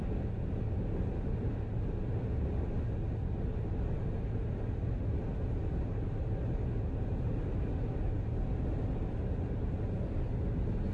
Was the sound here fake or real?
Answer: real